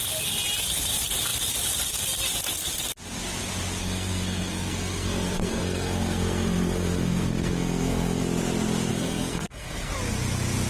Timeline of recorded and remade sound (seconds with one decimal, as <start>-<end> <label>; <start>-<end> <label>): 0.0-3.8 recorded; 3.8-8.2 remade; 8.2-8.9 recorded; 8.9-9.9 remade; 9.9-10.7 recorded